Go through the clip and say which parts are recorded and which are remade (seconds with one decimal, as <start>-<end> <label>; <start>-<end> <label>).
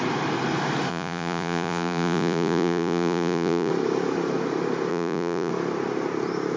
0.0-0.9 recorded; 0.9-3.7 remade; 3.7-4.9 recorded; 4.9-5.5 remade; 5.5-6.6 recorded